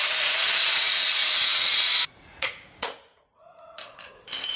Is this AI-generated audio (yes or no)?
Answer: yes